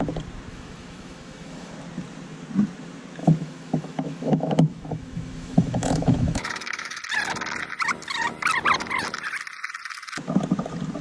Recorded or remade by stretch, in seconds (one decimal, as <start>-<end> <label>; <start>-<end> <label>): 0.0-0.5 recorded; 0.5-1.7 remade; 1.7-3.2 recorded; 3.2-7.0 remade; 7.0-11.0 recorded